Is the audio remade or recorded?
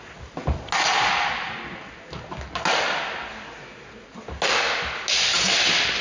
recorded